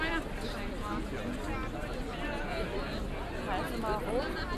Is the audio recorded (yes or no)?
yes